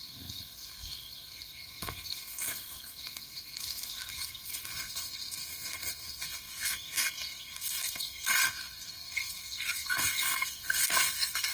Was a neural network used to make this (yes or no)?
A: yes